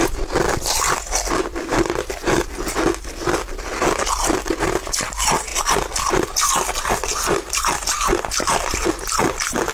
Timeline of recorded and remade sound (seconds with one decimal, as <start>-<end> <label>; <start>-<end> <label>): 0.0-9.7 remade